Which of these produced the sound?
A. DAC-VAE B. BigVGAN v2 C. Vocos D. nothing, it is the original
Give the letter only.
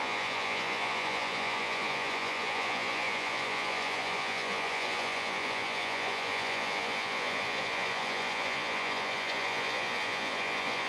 C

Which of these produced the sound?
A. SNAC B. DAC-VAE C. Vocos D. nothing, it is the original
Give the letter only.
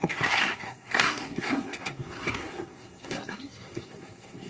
A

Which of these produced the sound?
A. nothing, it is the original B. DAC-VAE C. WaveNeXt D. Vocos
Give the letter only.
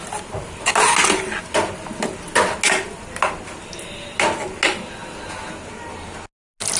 A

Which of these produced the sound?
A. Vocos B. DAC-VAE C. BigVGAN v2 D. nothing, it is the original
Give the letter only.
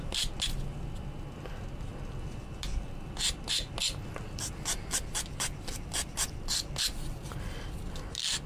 D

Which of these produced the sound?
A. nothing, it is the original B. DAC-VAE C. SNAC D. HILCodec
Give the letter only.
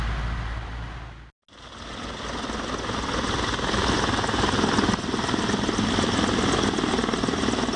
A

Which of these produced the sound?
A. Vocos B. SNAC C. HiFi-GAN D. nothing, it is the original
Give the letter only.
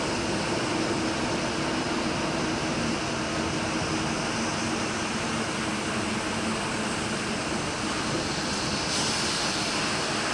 D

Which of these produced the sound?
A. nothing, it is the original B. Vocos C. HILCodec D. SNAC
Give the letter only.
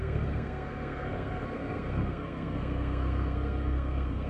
D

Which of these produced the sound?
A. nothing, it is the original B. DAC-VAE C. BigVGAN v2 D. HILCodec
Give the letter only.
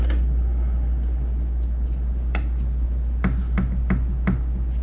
A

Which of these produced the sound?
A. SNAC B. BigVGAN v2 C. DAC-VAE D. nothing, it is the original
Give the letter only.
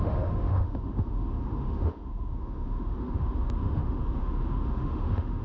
C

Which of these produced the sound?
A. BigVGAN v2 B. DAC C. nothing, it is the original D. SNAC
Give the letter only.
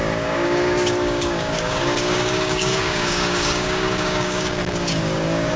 B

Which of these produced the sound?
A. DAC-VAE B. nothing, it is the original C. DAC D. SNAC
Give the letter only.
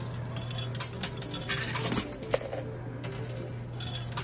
B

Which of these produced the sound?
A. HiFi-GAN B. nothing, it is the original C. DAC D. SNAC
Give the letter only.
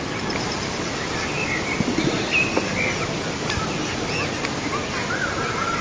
B